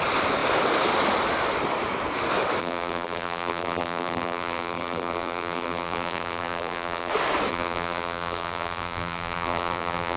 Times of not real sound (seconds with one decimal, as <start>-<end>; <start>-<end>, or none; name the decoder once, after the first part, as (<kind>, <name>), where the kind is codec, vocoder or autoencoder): 2.6-7.1 (vocoder, BigVGAN v2); 7.5-10.2

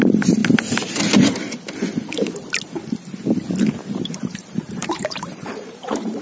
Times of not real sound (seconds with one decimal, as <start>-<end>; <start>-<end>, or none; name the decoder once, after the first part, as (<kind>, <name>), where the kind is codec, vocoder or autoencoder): 0.0-0.4 (vocoder, BigVGAN v2); 4.1-6.2

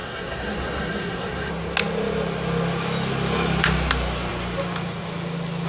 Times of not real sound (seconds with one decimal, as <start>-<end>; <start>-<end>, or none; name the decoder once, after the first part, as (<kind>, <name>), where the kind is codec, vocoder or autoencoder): 0.0-1.5 (codec, SNAC)

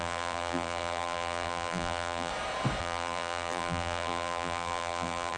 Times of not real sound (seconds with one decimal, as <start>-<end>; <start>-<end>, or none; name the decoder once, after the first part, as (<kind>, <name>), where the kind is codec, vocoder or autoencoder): 0.0-2.3 (vocoder, BigVGAN v2); 2.8-5.4

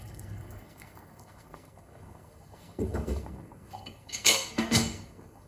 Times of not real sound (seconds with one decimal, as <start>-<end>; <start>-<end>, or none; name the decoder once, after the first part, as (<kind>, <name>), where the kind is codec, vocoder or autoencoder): 0.0-5.5 (codec, SNAC)